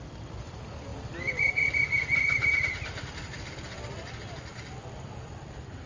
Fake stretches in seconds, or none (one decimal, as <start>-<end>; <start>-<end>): none